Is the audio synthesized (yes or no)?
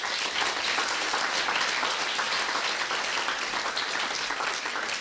no